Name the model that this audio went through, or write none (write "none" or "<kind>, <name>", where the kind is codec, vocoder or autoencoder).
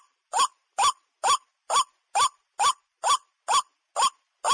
none